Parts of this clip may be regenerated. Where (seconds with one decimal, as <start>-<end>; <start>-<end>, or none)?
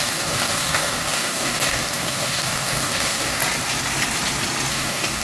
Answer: 0.0-3.4; 4.7-5.2